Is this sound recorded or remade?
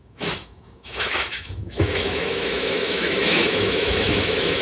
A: remade